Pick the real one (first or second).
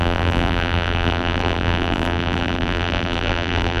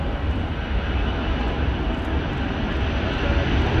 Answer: second